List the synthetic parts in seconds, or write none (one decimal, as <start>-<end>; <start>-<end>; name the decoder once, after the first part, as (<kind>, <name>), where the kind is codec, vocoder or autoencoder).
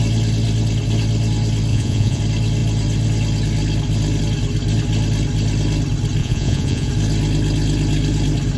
1.7-2.2 (vocoder, Vocos); 6.2-6.9